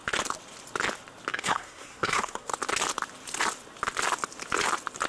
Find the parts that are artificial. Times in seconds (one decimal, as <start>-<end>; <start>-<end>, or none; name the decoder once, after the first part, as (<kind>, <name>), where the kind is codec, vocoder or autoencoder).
1.3-2.5 (codec, SNAC)